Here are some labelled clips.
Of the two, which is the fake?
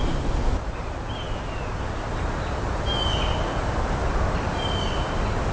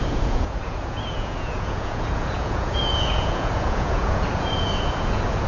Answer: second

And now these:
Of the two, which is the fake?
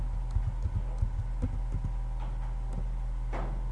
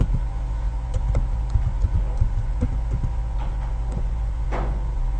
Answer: second